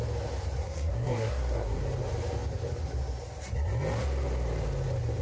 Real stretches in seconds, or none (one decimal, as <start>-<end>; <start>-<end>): 0.0-0.6; 1.8-5.2